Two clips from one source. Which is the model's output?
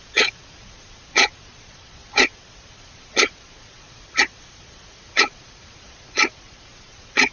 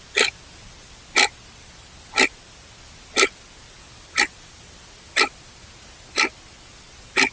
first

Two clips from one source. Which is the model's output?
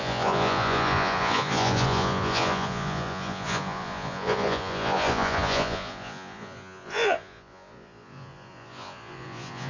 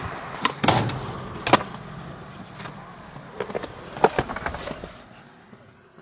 first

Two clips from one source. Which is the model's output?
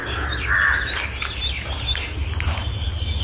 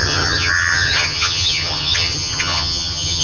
second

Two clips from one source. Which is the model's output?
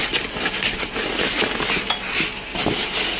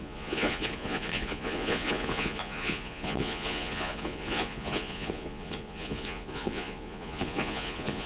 second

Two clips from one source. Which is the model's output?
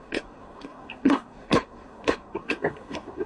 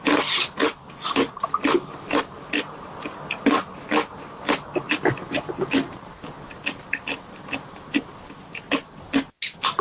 first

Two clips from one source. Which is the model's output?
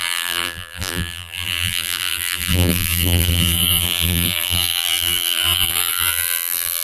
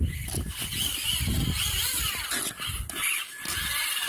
first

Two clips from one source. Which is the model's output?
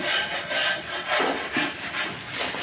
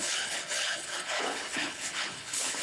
second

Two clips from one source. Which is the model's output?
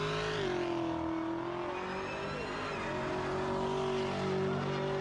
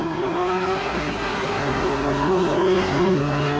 second